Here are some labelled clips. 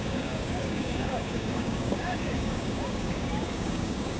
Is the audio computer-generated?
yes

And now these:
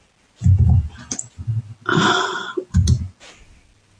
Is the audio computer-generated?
no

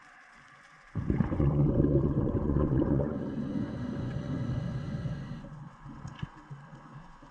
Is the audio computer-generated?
yes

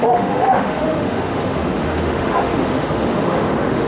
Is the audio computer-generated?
yes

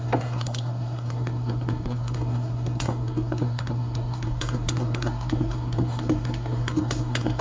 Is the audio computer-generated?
yes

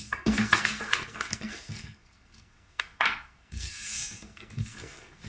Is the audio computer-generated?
yes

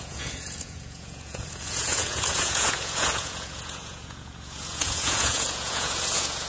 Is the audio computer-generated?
yes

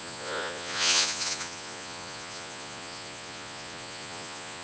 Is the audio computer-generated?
yes